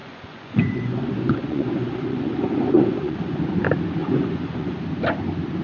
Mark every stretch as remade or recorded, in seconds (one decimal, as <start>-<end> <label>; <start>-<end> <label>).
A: 0.0-3.4 remade; 3.4-4.0 recorded; 4.0-4.8 remade; 4.8-5.6 recorded